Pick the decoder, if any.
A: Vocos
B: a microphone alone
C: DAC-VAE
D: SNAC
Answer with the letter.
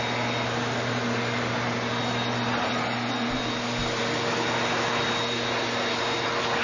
B